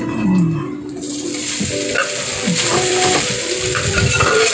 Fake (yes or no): no